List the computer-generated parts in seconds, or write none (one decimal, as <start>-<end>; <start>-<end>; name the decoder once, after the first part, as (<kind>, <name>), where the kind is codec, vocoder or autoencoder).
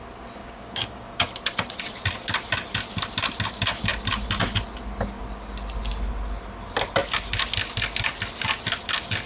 0.4-1.3 (codec, DAC)